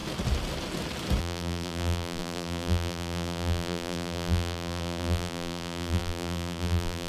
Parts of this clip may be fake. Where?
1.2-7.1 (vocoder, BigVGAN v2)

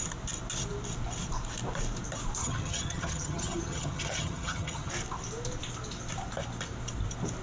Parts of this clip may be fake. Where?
2.4-4.9 (vocoder, HiFi-GAN)

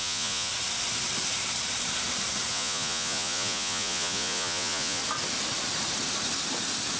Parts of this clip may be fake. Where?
0.0-0.5 (vocoder, Vocos); 2.5-5.0